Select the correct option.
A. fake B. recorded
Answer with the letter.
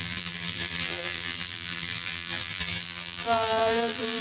A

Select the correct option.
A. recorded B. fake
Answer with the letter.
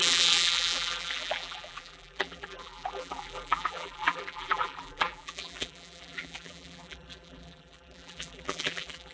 B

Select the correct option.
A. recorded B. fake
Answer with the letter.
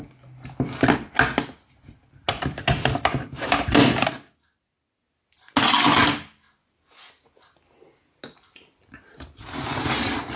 A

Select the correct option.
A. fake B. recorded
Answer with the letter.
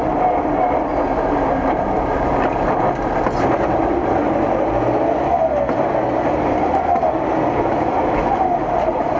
B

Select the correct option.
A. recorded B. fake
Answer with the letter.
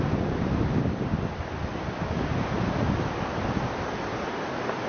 A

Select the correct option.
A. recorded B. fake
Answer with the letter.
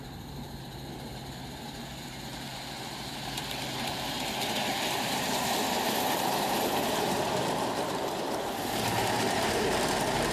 B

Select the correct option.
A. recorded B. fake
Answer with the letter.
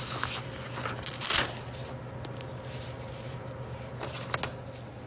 A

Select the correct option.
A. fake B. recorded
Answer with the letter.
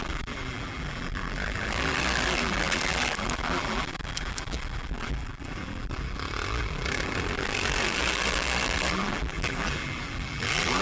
A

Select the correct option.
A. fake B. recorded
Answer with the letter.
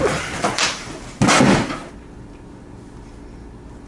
B